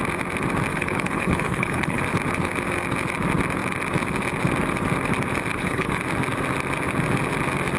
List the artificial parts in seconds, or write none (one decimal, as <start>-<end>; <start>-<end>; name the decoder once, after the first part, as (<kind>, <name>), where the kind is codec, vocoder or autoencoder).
0.7-2.0 (codec, HILCodec); 5.5-6.0